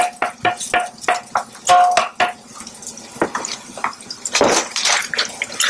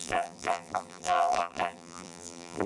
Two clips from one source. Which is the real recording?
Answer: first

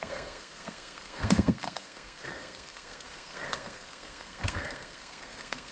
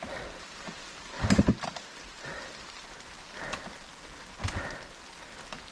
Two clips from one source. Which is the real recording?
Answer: second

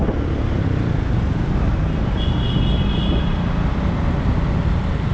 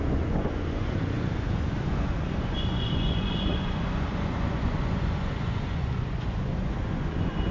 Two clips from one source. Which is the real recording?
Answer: first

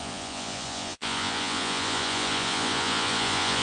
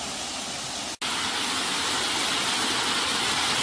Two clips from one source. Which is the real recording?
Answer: second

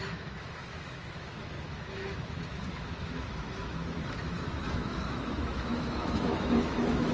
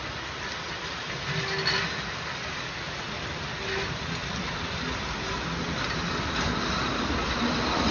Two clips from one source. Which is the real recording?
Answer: second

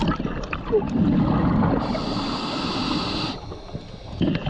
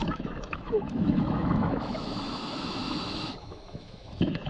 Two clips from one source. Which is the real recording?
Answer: first